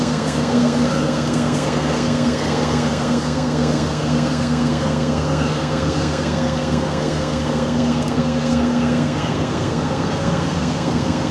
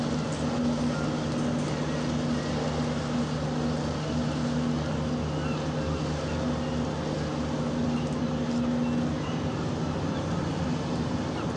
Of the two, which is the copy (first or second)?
first